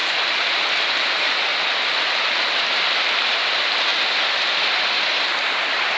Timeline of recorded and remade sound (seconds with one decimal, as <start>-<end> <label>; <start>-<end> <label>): 0.0-0.9 recorded; 0.9-1.5 remade; 1.5-3.3 recorded; 3.3-3.9 remade; 3.9-4.6 recorded; 4.6-6.0 remade